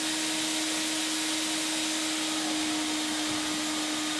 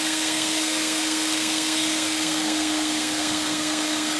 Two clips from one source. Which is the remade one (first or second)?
second